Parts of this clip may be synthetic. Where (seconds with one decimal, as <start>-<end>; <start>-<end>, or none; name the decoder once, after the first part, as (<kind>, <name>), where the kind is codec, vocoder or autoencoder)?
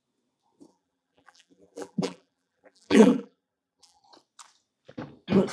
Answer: 0.7-4.0 (vocoder, BigVGAN v2)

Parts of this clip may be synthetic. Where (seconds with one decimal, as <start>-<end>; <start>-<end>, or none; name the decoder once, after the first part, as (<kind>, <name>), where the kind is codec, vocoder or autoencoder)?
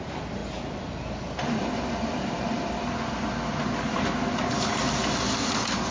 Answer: none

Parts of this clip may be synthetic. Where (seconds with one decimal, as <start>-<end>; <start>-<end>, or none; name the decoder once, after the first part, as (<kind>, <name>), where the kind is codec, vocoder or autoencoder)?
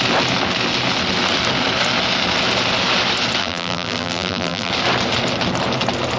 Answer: 3.4-4.7 (vocoder, BigVGAN v2)